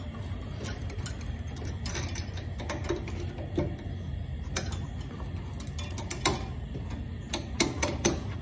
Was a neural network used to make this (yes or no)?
no